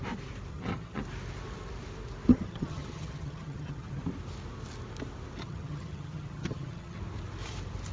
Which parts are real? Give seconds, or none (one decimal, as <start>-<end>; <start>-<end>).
0.0-0.5; 1.0-2.3; 4.0-5.4; 7.0-7.9